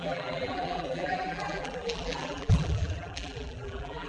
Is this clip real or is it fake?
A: fake